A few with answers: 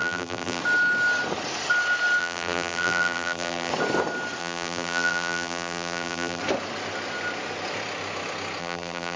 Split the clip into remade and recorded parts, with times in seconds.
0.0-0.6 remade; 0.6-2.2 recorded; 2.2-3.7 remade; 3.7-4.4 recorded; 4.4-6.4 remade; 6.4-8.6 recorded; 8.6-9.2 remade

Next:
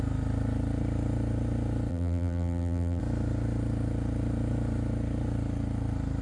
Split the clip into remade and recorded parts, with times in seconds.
0.0-1.9 recorded; 1.9-3.0 remade; 3.0-6.2 recorded

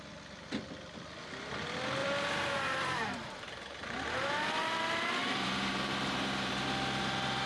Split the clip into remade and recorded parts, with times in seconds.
0.0-2.0 recorded; 2.0-6.5 remade; 6.5-7.5 recorded

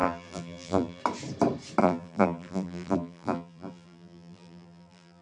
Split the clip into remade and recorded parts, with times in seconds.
0.0-1.0 remade; 1.0-1.8 recorded; 1.8-5.2 remade

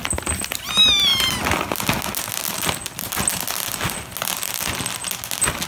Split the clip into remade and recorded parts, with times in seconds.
0.0-5.7 recorded

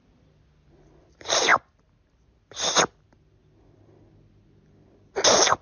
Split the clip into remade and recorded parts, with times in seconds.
0.0-5.6 recorded